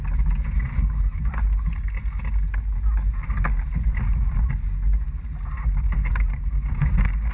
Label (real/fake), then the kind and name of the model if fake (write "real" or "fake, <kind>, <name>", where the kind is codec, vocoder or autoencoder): real